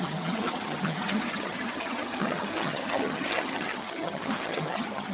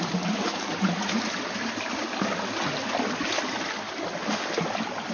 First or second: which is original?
second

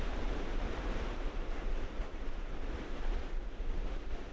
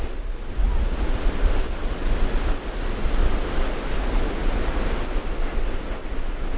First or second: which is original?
second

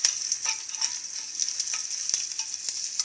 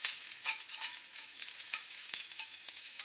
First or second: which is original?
first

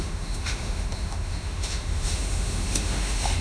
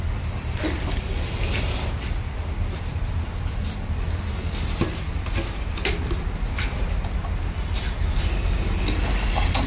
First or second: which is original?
second